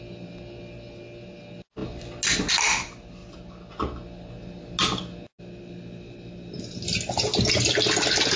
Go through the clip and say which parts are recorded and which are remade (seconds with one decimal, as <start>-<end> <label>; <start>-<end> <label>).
0.0-8.4 recorded